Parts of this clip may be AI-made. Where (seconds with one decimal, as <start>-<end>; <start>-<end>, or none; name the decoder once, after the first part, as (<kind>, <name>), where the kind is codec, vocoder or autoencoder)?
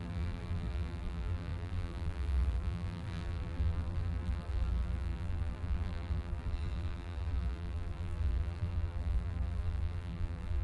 0.0-10.6 (vocoder, BigVGAN v2)